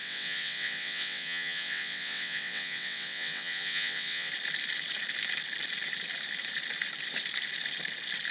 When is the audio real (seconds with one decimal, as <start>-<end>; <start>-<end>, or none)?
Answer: 4.3-8.3